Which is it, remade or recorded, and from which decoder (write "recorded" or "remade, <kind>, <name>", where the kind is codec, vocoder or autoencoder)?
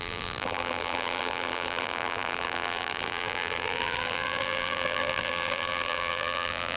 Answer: remade, vocoder, BigVGAN v2